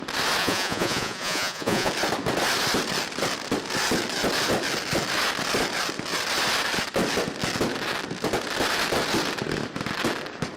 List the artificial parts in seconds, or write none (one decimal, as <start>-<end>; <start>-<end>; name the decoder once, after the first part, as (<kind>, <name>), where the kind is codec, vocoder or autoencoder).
0.4-1.9 (vocoder, Vocos)